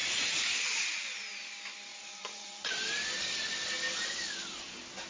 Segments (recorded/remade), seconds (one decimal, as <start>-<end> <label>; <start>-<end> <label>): 0.0-1.9 recorded; 1.9-2.7 remade; 2.7-5.1 recorded